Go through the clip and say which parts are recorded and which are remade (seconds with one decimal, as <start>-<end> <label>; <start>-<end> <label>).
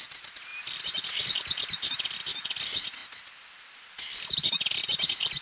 0.0-0.5 remade; 0.5-2.1 recorded; 2.1-3.0 remade; 3.0-3.8 recorded; 3.8-5.4 remade